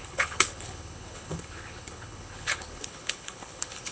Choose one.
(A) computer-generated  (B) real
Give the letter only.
A